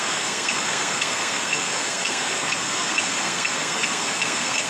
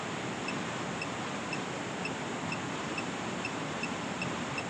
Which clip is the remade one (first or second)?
first